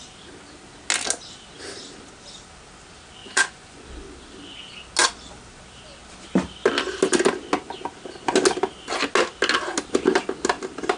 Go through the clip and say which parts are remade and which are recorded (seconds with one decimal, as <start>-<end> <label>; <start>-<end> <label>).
0.0-3.2 recorded; 3.2-3.8 remade; 3.8-11.0 recorded